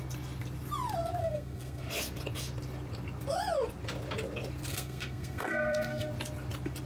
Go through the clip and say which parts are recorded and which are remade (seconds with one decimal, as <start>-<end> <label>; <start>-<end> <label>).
0.0-1.2 recorded; 1.2-1.9 remade; 1.9-4.7 recorded; 4.7-6.1 remade; 6.1-6.9 recorded